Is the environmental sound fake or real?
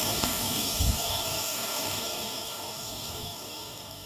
fake